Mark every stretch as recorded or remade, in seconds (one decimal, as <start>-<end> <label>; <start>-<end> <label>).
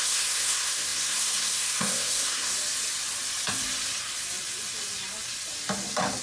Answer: 0.0-2.5 remade; 2.5-6.2 recorded